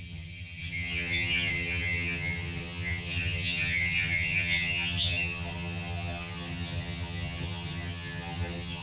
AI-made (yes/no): yes